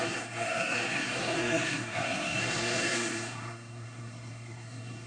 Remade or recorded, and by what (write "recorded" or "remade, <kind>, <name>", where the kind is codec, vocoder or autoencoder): remade, codec, SNAC